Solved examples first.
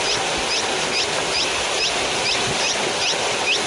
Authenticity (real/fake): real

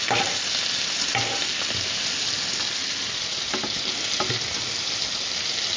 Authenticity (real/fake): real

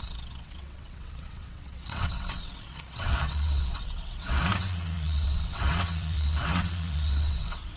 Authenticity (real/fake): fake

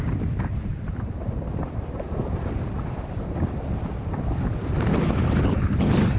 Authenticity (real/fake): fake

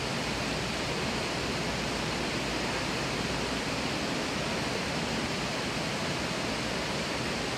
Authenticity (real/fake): real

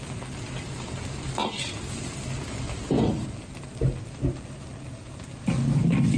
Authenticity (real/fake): real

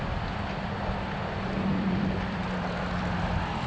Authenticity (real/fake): fake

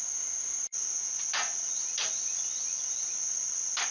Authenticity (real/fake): real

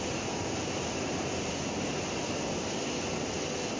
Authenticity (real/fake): real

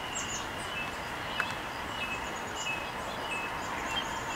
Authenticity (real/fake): real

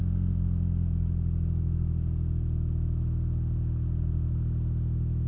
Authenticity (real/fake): real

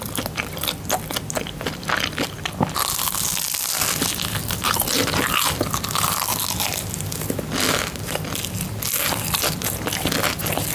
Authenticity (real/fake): real